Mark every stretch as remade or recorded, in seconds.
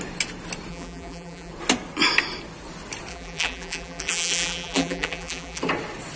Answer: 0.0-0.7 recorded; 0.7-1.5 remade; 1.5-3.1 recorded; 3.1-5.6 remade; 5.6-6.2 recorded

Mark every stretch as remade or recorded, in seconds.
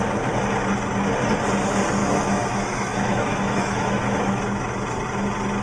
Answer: 0.0-2.0 recorded; 2.0-4.4 remade; 4.4-5.6 recorded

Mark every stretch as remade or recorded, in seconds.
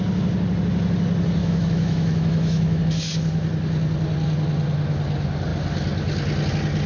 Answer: 0.0-1.4 recorded; 1.4-2.8 remade; 2.8-6.9 recorded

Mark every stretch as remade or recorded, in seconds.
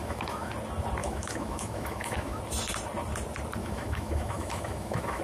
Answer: 0.0-0.5 remade; 0.5-1.0 recorded; 1.0-2.4 remade; 2.4-3.6 recorded; 3.6-5.2 remade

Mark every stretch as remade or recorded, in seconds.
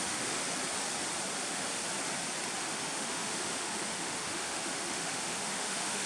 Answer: 0.0-0.4 remade; 0.4-1.4 recorded; 1.4-1.8 remade; 1.8-2.6 recorded; 2.6-6.1 remade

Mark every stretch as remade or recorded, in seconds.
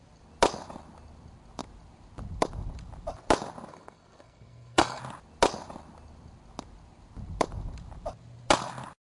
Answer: 0.0-3.7 recorded; 3.7-5.0 remade; 5.0-9.0 recorded